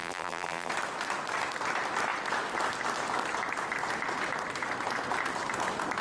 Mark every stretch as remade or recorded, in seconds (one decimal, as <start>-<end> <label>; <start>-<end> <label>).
0.0-0.7 remade; 0.7-6.0 recorded